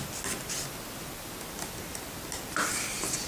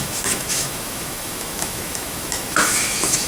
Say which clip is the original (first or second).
first